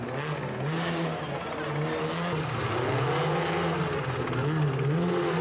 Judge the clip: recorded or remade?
recorded